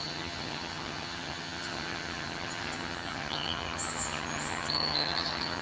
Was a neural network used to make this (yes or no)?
yes